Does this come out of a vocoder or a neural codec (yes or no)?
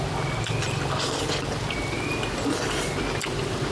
no